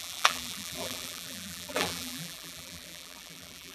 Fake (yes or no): yes